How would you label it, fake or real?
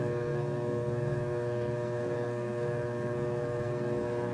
fake